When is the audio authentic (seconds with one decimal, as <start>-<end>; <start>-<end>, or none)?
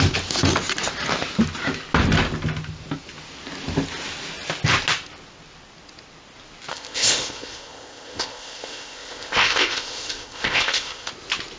0.0-6.7; 11.1-11.6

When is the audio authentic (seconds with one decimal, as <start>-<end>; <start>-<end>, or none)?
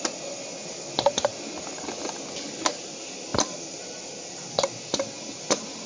1.3-1.9